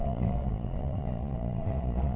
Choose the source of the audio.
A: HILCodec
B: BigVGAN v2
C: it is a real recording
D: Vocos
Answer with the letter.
D